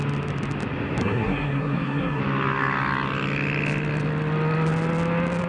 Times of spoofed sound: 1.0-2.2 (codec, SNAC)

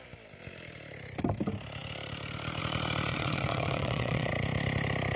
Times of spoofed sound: 3.1-4.3 (vocoder, WaveNeXt)

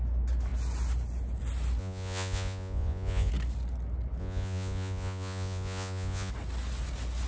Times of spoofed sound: 1.8-3.3 (vocoder, Vocos); 4.2-6.3